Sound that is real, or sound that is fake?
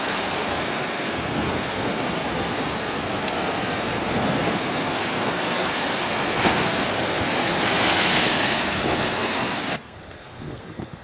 fake